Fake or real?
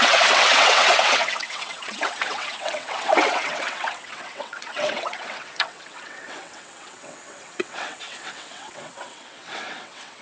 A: fake